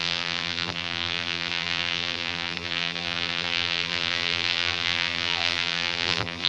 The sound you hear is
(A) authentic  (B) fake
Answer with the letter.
B